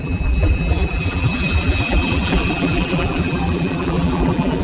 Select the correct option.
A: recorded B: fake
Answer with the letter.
B